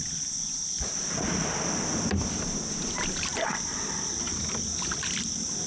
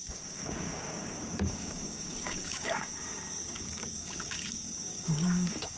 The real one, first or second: first